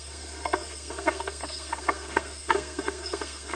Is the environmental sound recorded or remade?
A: remade